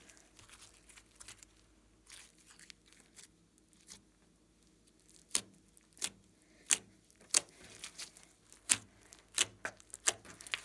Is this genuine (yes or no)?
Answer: yes